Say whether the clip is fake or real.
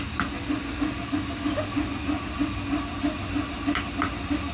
real